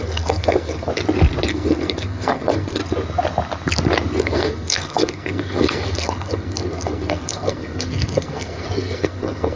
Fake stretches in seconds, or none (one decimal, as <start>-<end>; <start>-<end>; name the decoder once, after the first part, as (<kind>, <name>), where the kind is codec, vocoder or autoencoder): 0.0-0.9 (codec, SNAC); 1.5-2.8; 4.2-9.6

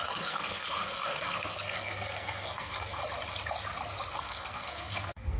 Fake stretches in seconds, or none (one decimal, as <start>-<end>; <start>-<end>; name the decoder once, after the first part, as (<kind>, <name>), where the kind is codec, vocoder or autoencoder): 0.0-3.0 (codec, SNAC); 4.2-5.4